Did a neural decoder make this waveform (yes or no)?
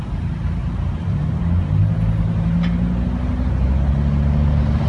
no